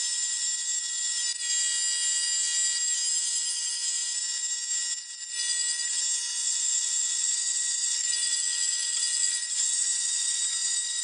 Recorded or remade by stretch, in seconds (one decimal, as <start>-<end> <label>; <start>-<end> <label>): 0.0-6.4 recorded; 6.4-10.4 remade; 10.4-11.0 recorded